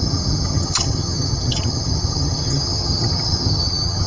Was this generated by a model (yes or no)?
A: yes